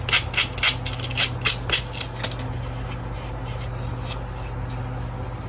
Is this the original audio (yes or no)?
yes